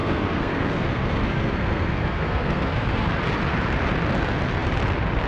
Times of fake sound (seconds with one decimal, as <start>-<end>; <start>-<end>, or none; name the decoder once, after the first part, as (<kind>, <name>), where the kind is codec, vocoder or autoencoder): 0.0-3.1 (codec, SNAC)